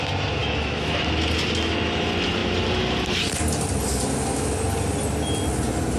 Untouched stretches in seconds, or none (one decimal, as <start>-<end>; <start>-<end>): 0.0-0.4; 1.0-6.0